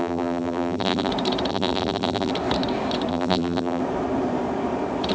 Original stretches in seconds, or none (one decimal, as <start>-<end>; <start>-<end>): 1.1-1.5; 2.3-3.1; 3.8-5.1